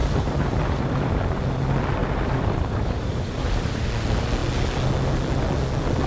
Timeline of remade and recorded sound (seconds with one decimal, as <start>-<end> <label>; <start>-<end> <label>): 0.0-1.4 remade; 1.4-2.0 recorded; 2.0-3.9 remade; 3.9-6.1 recorded